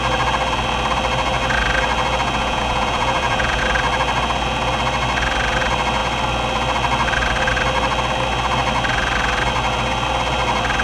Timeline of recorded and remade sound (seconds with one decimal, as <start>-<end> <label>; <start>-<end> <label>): 0.0-2.4 recorded; 2.4-3.6 remade; 3.6-10.8 recorded